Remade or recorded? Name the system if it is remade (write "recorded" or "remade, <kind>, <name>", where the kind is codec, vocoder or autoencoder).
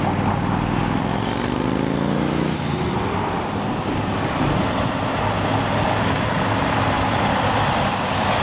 recorded